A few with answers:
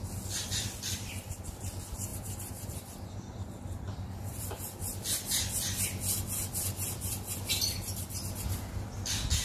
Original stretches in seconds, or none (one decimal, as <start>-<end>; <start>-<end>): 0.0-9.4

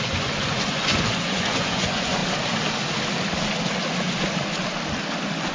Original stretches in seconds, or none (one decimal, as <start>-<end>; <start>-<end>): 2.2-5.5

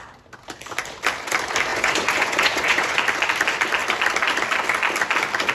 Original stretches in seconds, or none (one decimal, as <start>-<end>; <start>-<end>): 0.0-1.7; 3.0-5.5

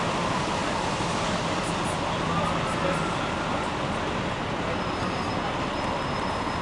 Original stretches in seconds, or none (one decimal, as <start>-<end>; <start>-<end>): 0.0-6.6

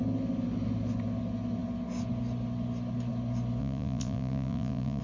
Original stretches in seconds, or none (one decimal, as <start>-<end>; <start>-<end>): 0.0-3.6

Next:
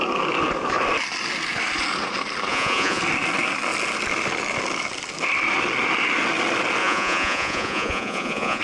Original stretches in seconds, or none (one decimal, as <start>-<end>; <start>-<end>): 0.0-2.5; 3.0-6.8

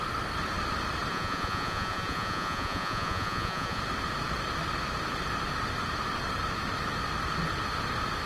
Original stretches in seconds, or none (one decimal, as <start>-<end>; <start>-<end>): 0.0-1.1; 3.8-8.3